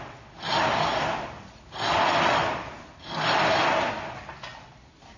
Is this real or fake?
real